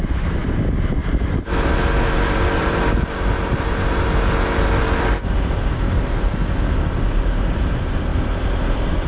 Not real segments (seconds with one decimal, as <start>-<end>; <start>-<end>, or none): 0.0-6.4; 7.1-9.1